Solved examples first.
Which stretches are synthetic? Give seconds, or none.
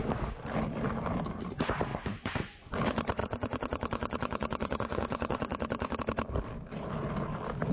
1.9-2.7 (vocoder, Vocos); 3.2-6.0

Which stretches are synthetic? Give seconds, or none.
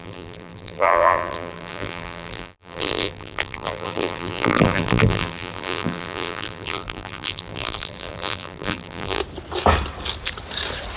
0.0-9.2 (vocoder, BigVGAN v2)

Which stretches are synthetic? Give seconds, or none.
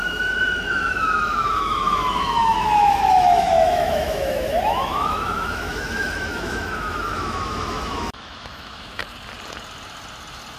0.0-9.0 (autoencoder, DAC-VAE)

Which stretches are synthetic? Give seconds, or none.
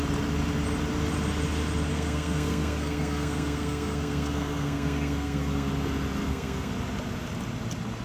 1.9-5.7 (codec, SNAC); 6.2-6.7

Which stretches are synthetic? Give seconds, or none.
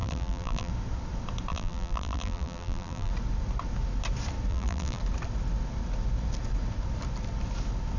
0.0-0.7 (vocoder, BigVGAN v2); 1.5-3.1; 4.5-5.0